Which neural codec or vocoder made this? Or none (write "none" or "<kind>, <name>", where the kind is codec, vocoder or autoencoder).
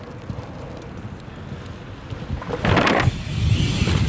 none